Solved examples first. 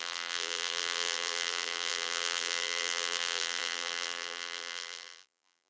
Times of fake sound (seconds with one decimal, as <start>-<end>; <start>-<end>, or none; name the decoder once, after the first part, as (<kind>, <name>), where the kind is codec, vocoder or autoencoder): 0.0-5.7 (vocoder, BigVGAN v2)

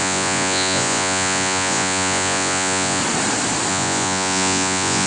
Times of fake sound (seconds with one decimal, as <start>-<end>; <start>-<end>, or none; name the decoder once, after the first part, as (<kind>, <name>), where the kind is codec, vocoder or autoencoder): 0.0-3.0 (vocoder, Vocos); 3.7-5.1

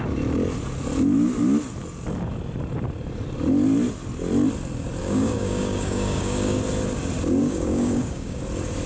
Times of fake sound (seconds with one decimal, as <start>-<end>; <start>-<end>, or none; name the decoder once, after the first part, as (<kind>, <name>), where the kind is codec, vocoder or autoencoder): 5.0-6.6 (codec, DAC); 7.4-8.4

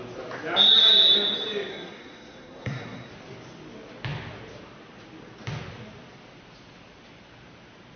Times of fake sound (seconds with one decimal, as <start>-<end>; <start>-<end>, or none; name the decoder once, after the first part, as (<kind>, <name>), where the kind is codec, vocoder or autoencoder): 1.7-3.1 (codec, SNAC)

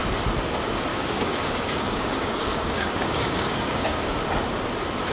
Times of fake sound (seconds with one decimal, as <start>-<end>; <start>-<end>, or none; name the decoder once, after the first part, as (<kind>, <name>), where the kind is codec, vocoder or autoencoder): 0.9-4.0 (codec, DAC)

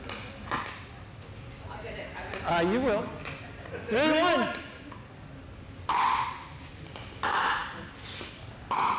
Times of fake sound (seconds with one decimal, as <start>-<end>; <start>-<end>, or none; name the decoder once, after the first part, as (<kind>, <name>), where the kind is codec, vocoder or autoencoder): none

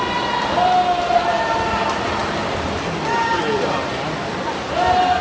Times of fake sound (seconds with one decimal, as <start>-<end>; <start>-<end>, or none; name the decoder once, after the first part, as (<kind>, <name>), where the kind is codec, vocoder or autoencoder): none

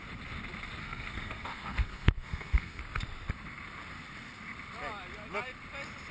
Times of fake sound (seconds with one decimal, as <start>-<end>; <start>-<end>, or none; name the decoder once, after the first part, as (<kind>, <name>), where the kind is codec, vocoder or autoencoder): 0.8-2.8 (codec, SNAC)